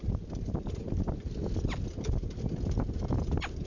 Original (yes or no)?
yes